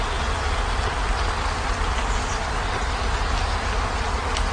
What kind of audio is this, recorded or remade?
recorded